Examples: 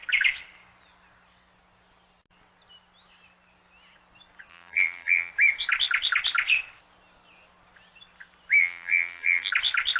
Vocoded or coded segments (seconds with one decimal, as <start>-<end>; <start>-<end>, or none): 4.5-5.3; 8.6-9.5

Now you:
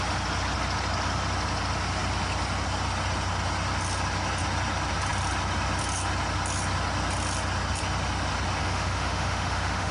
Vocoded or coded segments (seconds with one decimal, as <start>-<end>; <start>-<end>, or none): 8.6-9.9

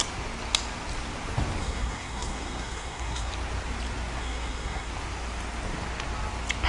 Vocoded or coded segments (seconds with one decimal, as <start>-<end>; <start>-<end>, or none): 1.6-3.3; 4.2-4.9

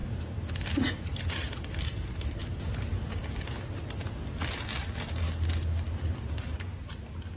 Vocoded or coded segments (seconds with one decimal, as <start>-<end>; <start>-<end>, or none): none

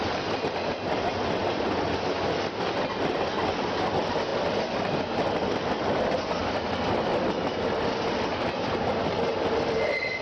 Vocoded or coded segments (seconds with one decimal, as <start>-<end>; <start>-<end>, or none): none